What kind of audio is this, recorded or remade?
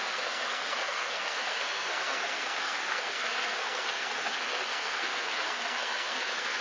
remade